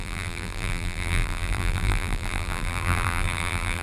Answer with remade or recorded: remade